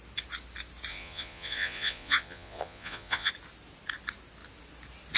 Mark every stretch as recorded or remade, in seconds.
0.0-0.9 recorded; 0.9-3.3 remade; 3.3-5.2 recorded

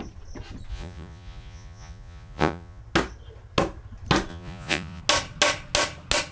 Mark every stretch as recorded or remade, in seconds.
0.0-0.7 recorded; 0.7-2.8 remade; 2.8-4.3 recorded; 4.3-5.0 remade; 5.0-6.3 recorded

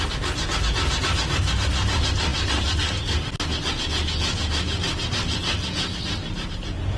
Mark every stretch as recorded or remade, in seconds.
0.0-7.0 recorded

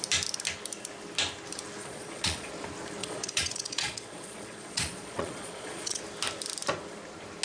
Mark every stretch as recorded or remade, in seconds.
0.0-1.8 recorded; 1.8-2.5 remade; 2.5-3.0 recorded; 3.0-6.0 remade; 6.0-7.4 recorded

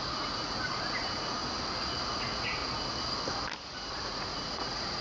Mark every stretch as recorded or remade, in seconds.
0.0-1.4 remade; 1.4-2.1 recorded; 2.1-2.6 remade; 2.6-3.9 recorded; 3.9-5.0 remade